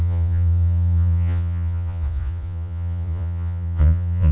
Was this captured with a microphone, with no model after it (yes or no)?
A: no